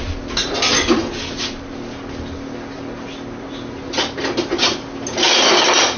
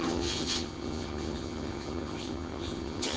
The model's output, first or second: second